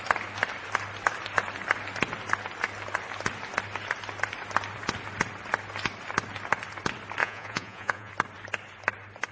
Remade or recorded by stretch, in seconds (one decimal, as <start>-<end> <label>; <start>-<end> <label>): 0.0-7.2 recorded; 7.2-8.1 remade; 8.1-9.3 recorded